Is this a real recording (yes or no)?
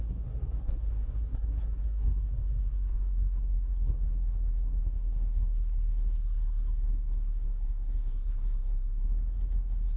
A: no